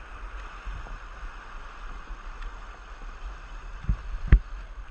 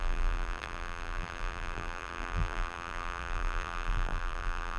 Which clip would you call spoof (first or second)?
second